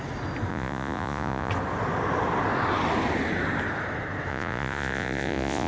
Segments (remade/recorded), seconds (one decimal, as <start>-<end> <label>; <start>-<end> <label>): 0.0-0.5 recorded; 0.5-1.5 remade; 1.5-4.3 recorded; 4.3-5.7 remade